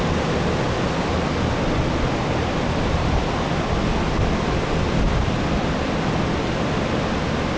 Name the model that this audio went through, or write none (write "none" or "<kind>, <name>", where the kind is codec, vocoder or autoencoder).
none